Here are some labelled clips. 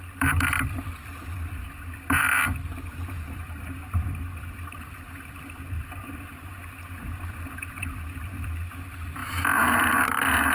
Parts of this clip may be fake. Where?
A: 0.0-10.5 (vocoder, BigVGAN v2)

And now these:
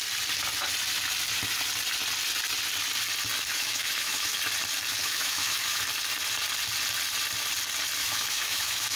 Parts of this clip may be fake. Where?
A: 3.5-4.4 (autoencoder, DAC-VAE); 4.9-5.8; 8.0-9.0

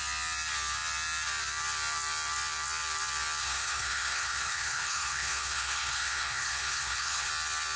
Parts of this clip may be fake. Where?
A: 3.4-7.3 (codec, HILCodec)